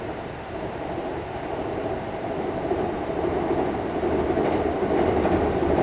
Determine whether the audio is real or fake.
real